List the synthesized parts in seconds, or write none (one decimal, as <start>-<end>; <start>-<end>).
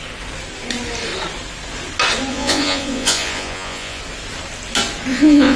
2.3-4.0; 5.1-5.6